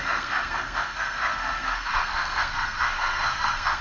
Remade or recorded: remade